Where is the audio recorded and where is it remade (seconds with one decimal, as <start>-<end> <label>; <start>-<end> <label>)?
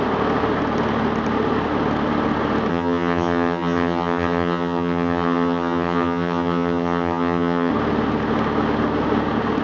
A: 0.0-2.7 recorded; 2.7-7.7 remade; 7.7-9.6 recorded